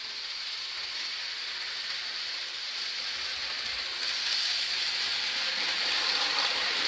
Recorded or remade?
recorded